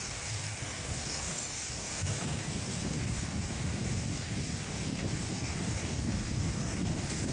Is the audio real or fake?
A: fake